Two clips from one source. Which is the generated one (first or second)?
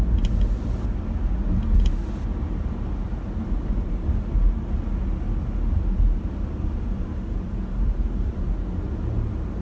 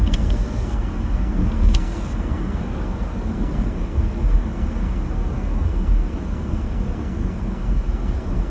second